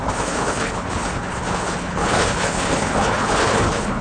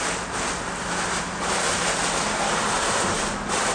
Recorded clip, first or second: second